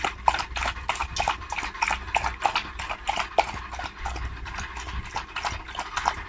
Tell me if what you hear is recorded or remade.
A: recorded